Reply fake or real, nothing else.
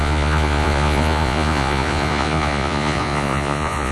fake